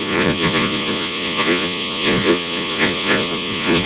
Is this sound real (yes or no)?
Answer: no